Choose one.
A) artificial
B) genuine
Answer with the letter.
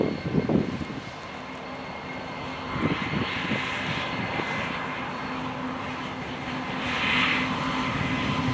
B